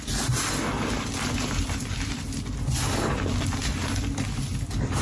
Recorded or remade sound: recorded